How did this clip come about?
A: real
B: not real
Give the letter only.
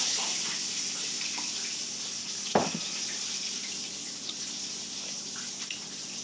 A